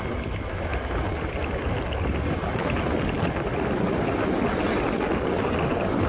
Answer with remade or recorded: recorded